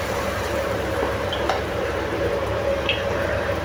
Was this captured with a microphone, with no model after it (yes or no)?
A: no